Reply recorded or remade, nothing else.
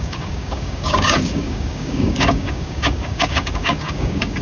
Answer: remade